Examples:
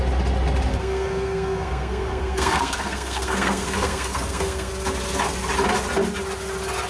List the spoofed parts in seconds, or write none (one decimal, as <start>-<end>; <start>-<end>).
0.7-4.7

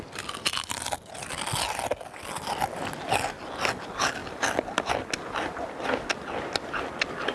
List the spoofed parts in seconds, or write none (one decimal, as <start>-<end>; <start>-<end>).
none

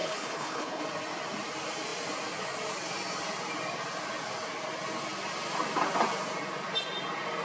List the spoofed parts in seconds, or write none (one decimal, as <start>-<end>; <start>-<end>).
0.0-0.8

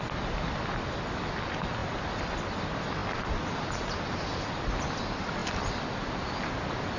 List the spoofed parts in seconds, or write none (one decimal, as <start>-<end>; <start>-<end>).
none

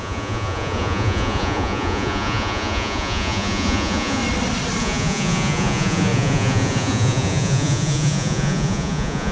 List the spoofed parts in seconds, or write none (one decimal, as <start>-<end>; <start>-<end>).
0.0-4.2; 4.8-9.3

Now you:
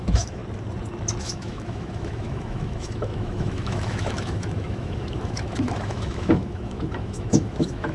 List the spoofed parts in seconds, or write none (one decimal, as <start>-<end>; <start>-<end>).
0.0-0.4; 1.2-7.9

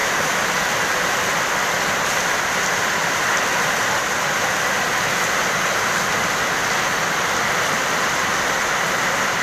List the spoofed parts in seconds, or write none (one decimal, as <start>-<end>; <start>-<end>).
0.0-4.5; 6.6-8.0